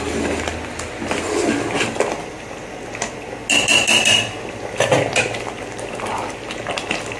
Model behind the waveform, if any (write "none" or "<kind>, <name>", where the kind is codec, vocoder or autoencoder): none